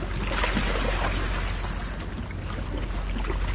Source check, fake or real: real